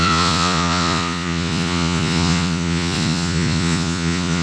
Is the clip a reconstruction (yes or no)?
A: yes